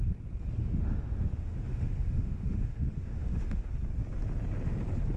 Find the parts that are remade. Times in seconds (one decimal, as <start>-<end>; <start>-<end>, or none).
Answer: 0.6-3.7